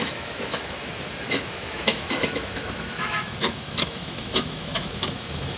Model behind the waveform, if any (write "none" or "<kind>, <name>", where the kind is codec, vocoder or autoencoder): autoencoder, DAC-VAE